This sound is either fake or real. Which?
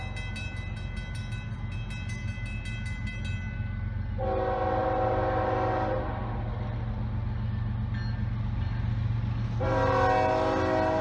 real